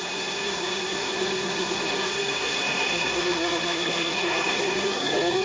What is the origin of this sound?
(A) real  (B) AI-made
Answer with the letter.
B